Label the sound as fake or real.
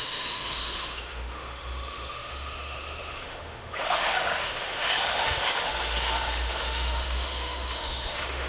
fake